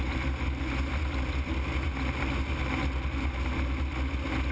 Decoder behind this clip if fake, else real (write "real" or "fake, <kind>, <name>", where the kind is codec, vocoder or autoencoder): real